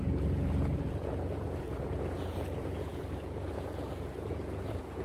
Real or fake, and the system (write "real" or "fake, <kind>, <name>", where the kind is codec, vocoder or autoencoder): fake, vocoder, Vocos